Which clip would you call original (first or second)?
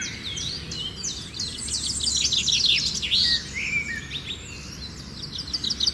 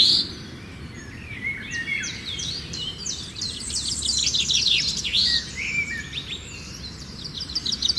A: first